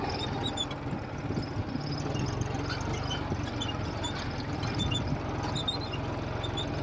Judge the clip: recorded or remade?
recorded